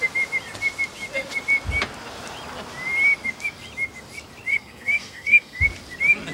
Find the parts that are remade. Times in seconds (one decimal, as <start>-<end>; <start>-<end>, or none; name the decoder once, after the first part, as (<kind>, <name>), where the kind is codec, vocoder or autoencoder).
4.5-5.6 (codec, SNAC)